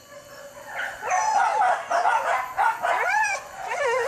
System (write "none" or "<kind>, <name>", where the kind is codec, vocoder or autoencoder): vocoder, Vocos